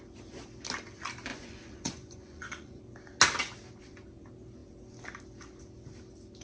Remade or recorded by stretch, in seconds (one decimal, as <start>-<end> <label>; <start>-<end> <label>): 0.0-1.3 recorded; 1.3-2.8 remade; 2.8-6.4 recorded